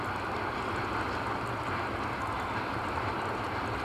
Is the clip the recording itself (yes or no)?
yes